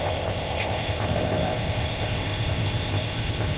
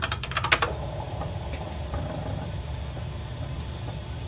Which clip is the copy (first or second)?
first